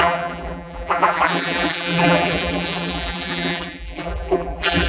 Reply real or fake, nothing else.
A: fake